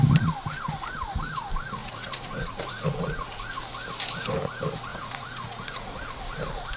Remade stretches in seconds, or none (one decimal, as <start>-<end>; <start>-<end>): 1.8-3.6; 4.9-6.0